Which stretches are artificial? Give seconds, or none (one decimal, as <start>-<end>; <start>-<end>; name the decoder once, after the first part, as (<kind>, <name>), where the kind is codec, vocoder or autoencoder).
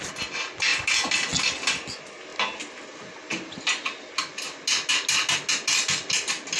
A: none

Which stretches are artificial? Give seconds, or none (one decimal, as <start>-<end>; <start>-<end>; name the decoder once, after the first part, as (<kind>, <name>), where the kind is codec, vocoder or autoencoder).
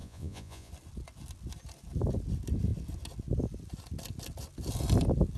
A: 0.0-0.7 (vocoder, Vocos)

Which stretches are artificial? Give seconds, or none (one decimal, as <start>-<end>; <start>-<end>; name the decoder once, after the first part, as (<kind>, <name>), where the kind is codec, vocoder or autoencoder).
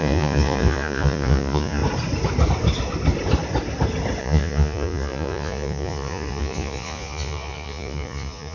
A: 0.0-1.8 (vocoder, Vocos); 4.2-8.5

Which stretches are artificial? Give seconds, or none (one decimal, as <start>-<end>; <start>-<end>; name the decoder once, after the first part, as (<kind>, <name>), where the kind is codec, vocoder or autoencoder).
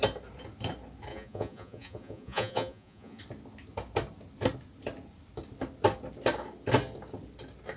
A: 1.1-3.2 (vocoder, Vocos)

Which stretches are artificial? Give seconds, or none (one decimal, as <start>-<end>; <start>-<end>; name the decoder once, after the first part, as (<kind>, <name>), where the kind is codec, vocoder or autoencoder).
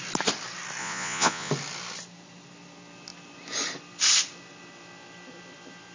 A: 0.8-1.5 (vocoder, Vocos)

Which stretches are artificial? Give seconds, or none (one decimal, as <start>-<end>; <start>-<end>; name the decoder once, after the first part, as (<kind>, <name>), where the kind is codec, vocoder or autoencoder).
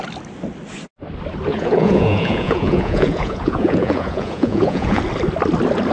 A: 1.5-5.0 (vocoder, Vocos)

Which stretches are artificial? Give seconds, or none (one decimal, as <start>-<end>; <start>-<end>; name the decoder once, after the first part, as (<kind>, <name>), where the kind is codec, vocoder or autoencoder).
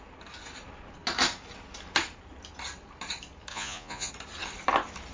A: 3.5-4.1 (vocoder, Vocos)